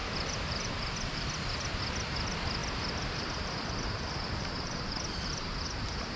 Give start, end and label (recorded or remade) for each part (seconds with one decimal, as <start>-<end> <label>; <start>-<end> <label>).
0.0-0.7 remade; 0.7-2.6 recorded; 2.6-6.2 remade